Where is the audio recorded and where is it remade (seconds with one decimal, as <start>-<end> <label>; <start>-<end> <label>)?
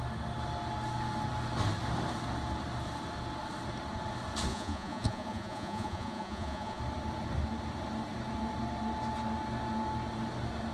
0.0-4.5 recorded; 4.5-6.8 remade; 6.8-10.7 recorded